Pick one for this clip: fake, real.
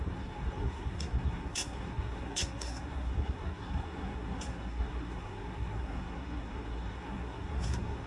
fake